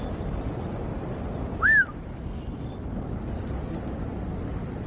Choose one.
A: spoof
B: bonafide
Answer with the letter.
B